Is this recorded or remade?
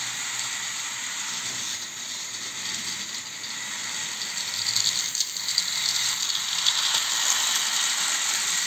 recorded